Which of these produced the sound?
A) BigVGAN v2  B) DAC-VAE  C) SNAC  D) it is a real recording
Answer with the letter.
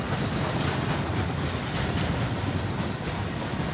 D